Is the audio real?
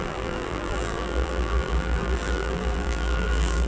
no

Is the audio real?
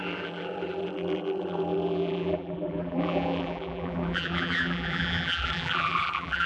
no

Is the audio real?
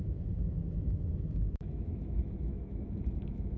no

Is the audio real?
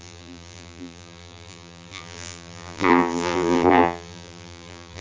no